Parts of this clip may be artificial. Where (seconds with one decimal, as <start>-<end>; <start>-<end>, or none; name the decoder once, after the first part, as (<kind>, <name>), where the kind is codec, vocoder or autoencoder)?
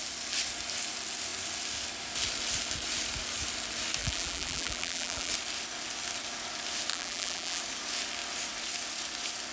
4.0-5.3 (vocoder, BigVGAN v2); 6.9-7.6